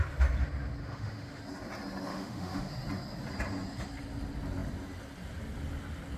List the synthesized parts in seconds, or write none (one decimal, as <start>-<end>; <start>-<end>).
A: 0.8-1.4; 2.1-2.7